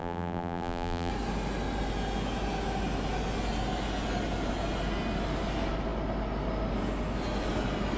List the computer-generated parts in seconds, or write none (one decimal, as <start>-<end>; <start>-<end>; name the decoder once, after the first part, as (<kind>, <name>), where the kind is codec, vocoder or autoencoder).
0.0-1.1 (vocoder, BigVGAN v2)